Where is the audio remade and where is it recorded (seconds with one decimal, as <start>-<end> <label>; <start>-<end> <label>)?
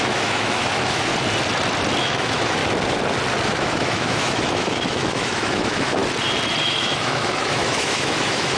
0.0-1.1 remade; 1.1-2.0 recorded; 2.0-2.6 remade; 2.6-3.5 recorded; 3.5-6.0 remade; 6.0-6.6 recorded; 6.6-8.6 remade